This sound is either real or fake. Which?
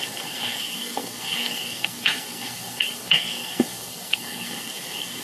fake